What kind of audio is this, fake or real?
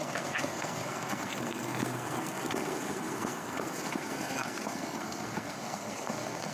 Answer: fake